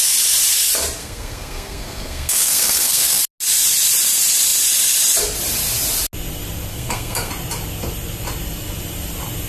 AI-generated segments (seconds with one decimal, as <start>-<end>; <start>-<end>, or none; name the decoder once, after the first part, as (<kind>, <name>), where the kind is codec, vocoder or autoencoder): 1.0-3.2 (codec, SNAC); 6.7-7.3

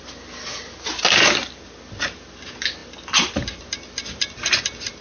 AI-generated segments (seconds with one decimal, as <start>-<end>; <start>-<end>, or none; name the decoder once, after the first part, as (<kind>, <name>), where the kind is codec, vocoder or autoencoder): none

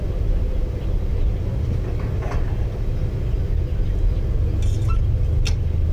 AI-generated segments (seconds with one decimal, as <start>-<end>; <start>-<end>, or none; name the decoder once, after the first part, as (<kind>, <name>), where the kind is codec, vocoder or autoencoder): none

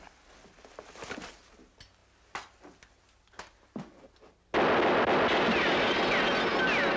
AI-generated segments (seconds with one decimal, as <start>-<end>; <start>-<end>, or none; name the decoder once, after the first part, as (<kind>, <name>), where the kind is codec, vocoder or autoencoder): none